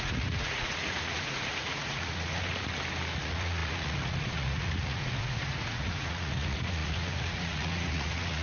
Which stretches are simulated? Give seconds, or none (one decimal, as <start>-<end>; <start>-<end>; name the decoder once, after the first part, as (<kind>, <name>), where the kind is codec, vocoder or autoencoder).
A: 0.0-2.7 (vocoder, Vocos); 3.2-8.4

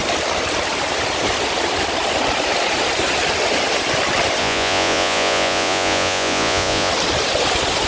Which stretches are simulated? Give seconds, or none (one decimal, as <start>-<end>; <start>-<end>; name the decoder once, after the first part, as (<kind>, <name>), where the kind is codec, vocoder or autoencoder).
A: 4.4-6.9 (vocoder, Vocos)

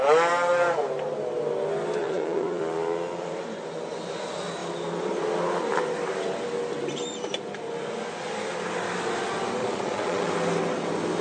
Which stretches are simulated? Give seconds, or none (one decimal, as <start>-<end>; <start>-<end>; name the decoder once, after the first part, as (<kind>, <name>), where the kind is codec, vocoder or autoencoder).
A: 2.0-2.6 (vocoder, Vocos); 9.6-10.3